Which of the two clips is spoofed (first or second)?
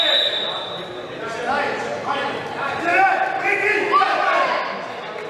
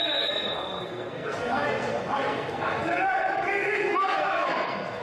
second